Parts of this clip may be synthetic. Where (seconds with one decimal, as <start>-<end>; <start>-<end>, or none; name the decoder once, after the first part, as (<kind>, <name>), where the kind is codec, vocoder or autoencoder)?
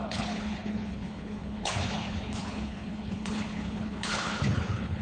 0.0-5.0 (codec, HILCodec)